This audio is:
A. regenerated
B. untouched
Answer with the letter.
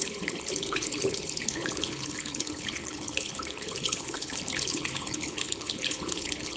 A